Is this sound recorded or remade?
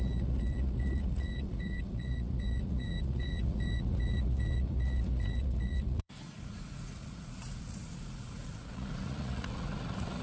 remade